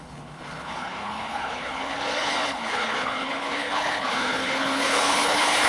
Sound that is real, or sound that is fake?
fake